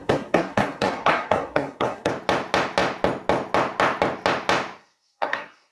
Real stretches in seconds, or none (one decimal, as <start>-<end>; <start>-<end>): 2.1-4.8